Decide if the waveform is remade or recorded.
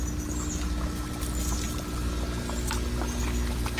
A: recorded